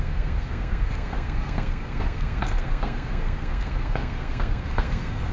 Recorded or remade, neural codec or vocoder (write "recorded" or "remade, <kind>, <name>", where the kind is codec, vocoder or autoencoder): remade, codec, SNAC